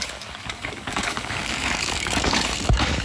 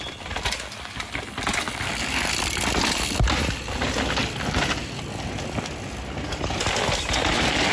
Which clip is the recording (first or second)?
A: second